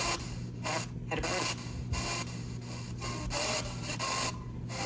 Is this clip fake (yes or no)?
no